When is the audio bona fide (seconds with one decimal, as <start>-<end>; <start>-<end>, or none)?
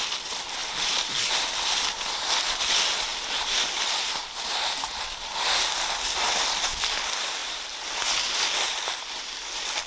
0.0-0.6; 1.2-7.4; 8.0-9.9